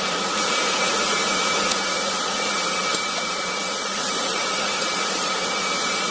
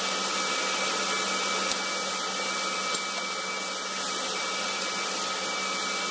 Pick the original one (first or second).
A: second